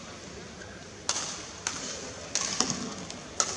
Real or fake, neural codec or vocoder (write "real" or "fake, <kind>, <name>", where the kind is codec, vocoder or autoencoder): real